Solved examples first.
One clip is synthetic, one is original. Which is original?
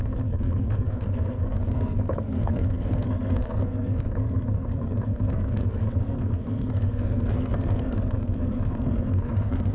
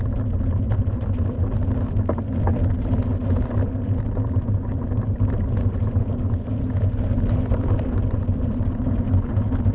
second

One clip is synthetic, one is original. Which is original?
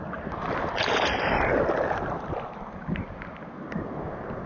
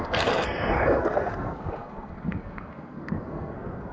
first